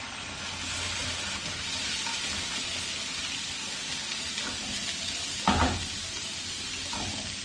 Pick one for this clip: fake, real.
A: real